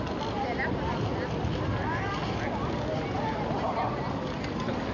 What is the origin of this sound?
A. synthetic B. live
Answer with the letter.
B